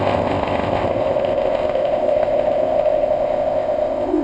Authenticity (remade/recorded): remade